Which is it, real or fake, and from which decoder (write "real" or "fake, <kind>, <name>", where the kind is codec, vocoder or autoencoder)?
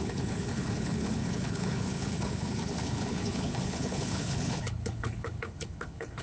fake, codec, HILCodec